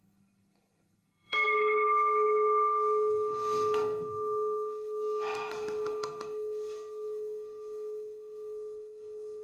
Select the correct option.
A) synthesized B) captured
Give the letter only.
A